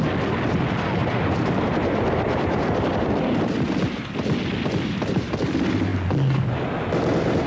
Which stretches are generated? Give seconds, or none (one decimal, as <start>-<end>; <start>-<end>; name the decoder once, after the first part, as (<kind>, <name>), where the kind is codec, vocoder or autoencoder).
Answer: 1.0-2.9 (vocoder, BigVGAN v2)